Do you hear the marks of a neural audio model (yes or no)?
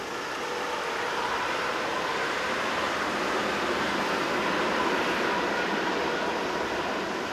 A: no